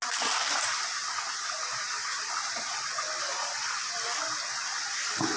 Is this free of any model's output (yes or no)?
yes